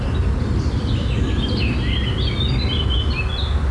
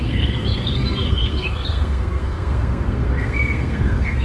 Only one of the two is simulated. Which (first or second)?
second